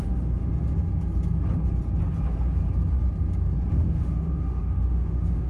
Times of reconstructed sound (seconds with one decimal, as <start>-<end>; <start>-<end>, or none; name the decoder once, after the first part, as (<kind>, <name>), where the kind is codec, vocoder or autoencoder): 0.0-0.4 (autoencoder, DAC-VAE); 3.7-5.5